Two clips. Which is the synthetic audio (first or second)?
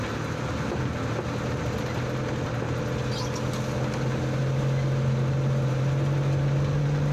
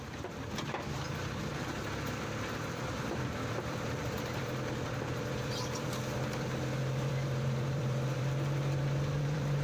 second